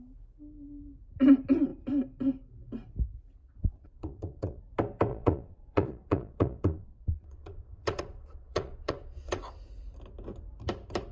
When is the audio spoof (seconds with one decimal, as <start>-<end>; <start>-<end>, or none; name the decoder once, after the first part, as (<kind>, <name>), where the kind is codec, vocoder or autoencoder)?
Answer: 3.4-4.6 (vocoder, Vocos); 5.1-9.4